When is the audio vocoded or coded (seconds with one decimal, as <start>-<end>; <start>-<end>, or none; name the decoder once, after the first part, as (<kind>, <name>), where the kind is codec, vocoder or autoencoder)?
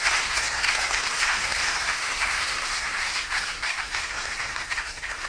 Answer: 0.0-5.3 (codec, SNAC)